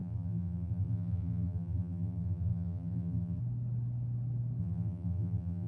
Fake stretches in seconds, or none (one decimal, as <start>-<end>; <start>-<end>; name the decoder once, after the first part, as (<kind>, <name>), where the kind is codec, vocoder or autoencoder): 0.0-3.4 (vocoder, BigVGAN v2); 4.6-5.7